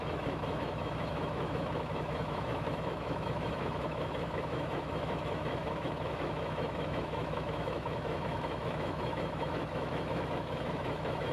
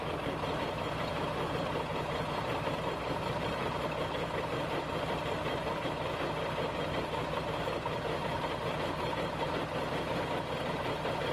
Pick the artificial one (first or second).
first